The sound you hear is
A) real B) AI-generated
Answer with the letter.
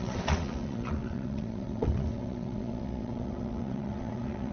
B